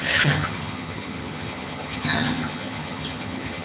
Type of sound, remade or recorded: remade